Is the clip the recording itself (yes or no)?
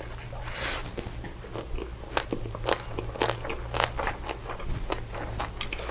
yes